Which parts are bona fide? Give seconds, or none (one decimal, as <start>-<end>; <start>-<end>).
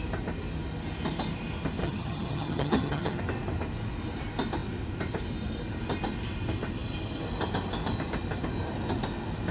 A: 0.0-1.8; 3.2-9.5